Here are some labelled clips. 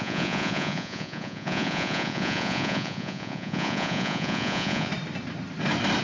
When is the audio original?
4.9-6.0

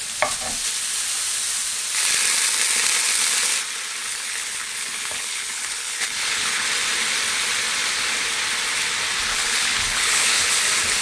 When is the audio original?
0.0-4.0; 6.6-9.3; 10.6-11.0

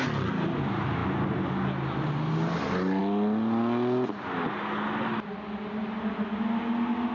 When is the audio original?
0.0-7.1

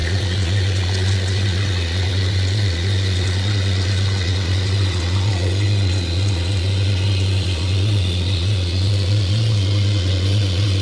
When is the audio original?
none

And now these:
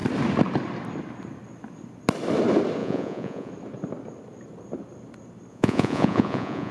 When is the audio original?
0.0-2.8; 3.5-5.5